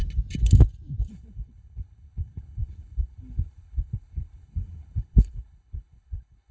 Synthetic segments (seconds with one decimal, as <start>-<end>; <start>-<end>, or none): 1.1-6.5